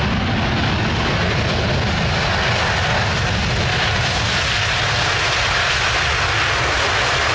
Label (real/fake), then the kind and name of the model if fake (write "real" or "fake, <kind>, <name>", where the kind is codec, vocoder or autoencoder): real